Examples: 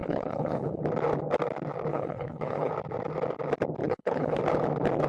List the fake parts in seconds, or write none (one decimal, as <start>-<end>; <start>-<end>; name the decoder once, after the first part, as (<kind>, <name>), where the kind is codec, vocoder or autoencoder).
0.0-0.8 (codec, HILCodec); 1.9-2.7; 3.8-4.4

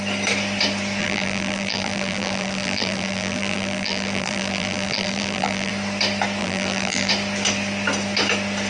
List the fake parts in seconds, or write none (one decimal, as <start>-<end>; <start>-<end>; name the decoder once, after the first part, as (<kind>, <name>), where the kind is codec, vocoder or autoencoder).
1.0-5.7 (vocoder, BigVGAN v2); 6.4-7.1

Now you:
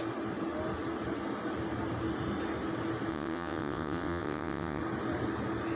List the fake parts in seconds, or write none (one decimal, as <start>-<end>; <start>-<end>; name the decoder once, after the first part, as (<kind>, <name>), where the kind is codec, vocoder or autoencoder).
3.1-4.8 (vocoder, WaveNeXt)

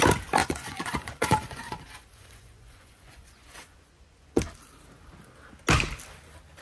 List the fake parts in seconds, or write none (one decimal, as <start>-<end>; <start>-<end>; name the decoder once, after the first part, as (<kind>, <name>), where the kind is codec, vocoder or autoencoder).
0.4-4.4 (vocoder, Vocos)